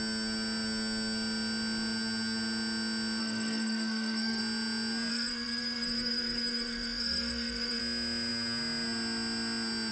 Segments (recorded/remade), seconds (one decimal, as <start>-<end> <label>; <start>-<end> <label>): 0.0-3.2 recorded; 3.2-4.4 remade; 4.4-5.1 recorded; 5.1-7.8 remade; 7.8-9.9 recorded